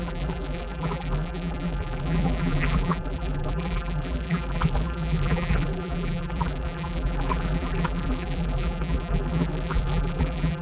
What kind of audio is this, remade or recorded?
remade